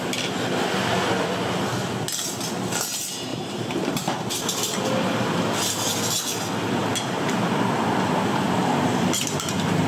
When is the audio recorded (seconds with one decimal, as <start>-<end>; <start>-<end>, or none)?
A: 0.0-3.3; 4.6-6.8; 7.4-8.6